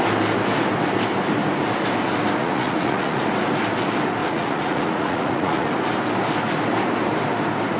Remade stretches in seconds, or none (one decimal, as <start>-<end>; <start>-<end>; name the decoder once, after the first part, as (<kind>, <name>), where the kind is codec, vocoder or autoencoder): 2.4-3.2 (vocoder, Vocos); 4.2-5.7